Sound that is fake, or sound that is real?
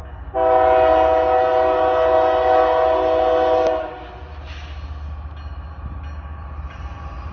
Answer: real